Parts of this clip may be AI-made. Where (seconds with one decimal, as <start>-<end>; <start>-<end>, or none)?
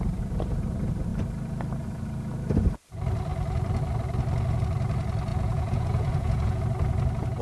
5.3-6.6